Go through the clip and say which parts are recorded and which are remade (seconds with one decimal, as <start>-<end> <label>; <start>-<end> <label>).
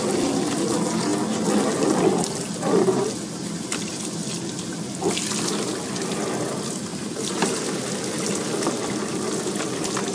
0.0-6.9 recorded; 6.9-7.4 remade; 7.4-10.1 recorded